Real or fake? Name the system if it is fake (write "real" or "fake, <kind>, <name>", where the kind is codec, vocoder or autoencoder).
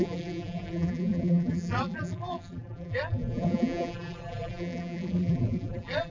fake, vocoder, BigVGAN v2